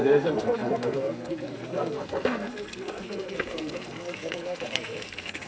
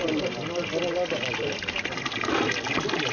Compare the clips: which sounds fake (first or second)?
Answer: first